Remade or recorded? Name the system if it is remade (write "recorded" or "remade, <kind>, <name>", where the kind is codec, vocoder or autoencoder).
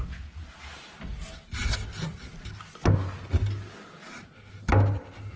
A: recorded